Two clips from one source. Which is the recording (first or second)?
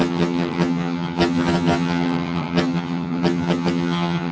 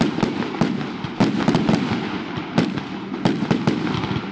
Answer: second